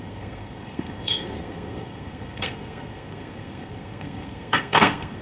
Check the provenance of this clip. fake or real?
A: fake